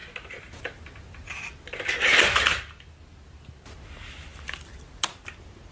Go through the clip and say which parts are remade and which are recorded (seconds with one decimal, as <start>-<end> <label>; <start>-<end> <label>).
0.0-5.7 recorded